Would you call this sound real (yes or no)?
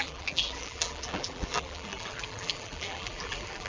no